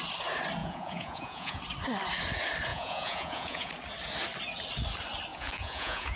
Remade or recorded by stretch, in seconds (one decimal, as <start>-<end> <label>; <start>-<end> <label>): 0.0-0.6 recorded; 0.6-1.6 remade; 1.6-2.7 recorded; 2.7-3.7 remade; 3.7-5.3 recorded; 5.3-6.2 remade